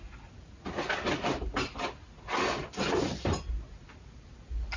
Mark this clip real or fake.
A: real